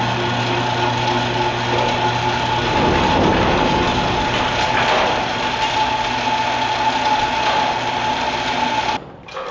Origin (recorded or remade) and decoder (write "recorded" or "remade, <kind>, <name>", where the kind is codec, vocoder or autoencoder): recorded